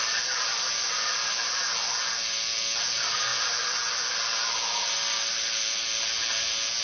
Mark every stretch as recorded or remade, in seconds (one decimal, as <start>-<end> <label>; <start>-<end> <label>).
0.0-6.8 recorded